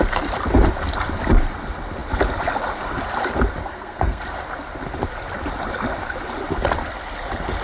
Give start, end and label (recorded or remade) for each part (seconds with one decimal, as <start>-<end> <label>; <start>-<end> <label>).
0.0-3.6 recorded; 3.6-4.2 remade; 4.2-7.6 recorded

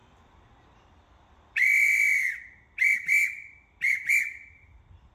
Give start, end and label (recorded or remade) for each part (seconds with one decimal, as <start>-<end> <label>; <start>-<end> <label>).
0.0-5.1 recorded

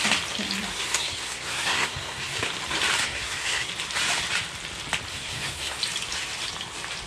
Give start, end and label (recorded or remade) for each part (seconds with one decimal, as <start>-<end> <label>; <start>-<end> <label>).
0.0-0.7 recorded; 0.7-2.5 remade; 2.5-3.0 recorded; 3.0-3.7 remade; 3.7-5.1 recorded; 5.1-5.8 remade; 5.8-7.1 recorded

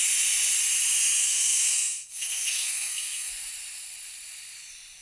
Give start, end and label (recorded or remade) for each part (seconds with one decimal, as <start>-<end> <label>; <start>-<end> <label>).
0.0-1.2 recorded; 1.2-3.3 remade; 3.3-5.0 recorded

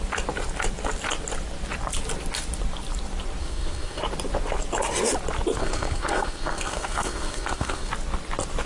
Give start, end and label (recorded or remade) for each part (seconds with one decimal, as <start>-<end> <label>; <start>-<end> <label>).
0.0-3.4 recorded; 3.4-4.0 remade; 4.0-5.6 recorded; 5.6-7.9 remade; 7.9-8.7 recorded

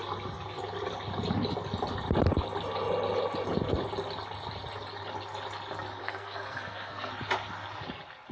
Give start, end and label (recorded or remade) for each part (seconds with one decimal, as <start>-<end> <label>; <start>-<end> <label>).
0.0-6.0 recorded; 6.0-7.1 remade; 7.1-8.3 recorded